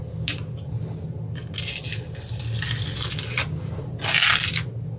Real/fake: real